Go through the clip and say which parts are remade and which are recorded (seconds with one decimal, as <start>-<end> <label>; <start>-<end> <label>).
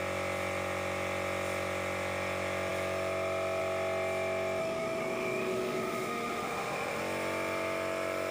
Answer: 0.0-4.6 recorded; 4.6-7.0 remade; 7.0-8.3 recorded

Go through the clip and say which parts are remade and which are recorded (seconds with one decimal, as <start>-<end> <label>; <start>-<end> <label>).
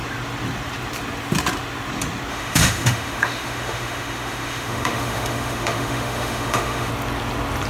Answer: 0.0-2.3 recorded; 2.3-6.9 remade; 6.9-7.7 recorded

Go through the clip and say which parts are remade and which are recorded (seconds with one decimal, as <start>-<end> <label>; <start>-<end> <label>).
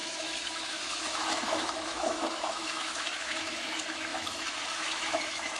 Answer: 0.0-5.6 remade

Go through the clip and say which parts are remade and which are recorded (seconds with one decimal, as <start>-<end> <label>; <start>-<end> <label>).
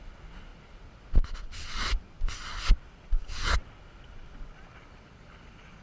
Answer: 0.0-5.8 recorded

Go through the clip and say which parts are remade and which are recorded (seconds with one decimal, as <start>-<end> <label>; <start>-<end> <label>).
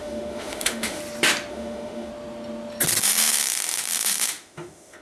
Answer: 0.0-1.0 remade; 1.0-1.5 recorded; 1.5-2.1 remade; 2.1-3.0 recorded; 3.0-5.0 remade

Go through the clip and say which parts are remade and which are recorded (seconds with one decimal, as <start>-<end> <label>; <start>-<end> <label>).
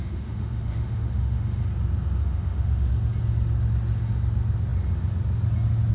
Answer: 0.0-1.6 remade; 1.6-2.2 recorded; 2.2-2.9 remade; 2.9-5.9 recorded